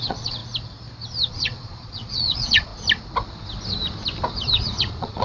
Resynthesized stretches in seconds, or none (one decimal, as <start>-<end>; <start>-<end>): 0.0-0.4; 1.3-2.7; 4.3-5.2

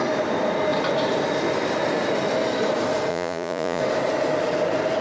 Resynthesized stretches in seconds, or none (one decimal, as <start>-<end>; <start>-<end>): 3.1-3.8

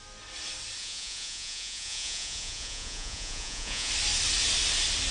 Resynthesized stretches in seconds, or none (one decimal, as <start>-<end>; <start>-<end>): 0.8-3.9

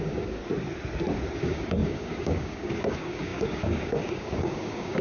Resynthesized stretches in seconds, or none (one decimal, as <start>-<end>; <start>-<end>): 0.0-0.4; 1.4-5.0

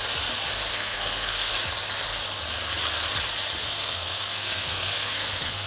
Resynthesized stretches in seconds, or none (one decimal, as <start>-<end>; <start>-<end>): 0.7-1.5; 3.6-5.7

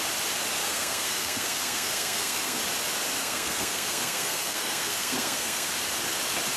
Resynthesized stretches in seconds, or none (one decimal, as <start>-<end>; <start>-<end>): 0.6-2.6; 3.2-5.7